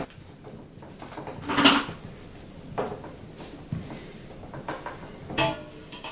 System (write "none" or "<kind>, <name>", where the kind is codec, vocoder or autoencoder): none